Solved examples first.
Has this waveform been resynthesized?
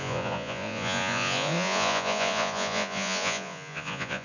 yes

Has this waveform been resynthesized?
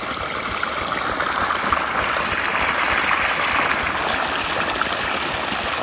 no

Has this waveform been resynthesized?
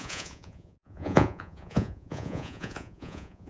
yes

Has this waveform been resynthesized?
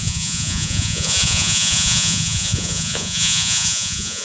yes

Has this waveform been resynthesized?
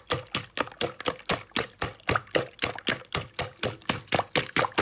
no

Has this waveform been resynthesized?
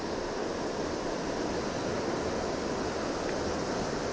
no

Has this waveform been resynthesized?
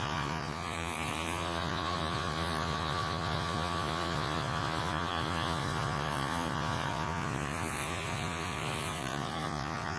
yes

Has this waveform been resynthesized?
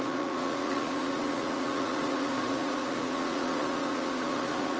yes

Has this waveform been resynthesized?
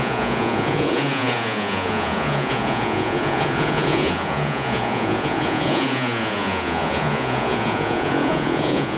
yes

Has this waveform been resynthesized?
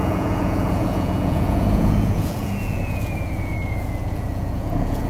yes